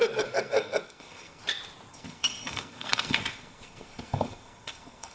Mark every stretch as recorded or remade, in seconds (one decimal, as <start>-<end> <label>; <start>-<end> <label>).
0.0-1.4 remade; 1.4-1.9 recorded; 1.9-5.1 remade